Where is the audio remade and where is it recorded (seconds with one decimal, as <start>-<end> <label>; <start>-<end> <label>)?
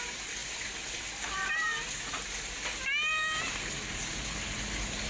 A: 0.0-5.1 recorded